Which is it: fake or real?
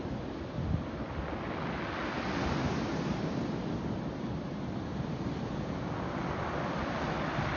real